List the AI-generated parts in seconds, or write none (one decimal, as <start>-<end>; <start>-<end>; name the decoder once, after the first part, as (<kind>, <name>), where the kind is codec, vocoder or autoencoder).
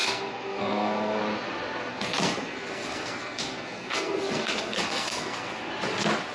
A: 0.0-1.2 (codec, SNAC); 1.9-5.7